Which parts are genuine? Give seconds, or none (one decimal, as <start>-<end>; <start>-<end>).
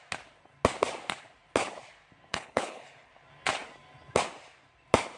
0.0-2.3; 3.1-5.2